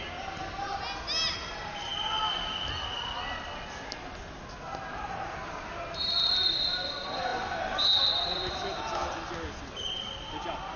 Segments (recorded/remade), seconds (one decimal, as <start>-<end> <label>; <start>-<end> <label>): 0.0-10.8 recorded